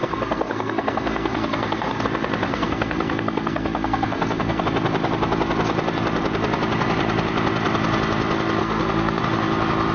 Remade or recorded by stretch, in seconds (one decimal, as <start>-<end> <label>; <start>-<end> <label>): 0.0-2.0 remade; 2.0-2.5 recorded; 2.5-4.6 remade; 4.6-8.6 recorded; 8.6-9.2 remade; 9.2-9.9 recorded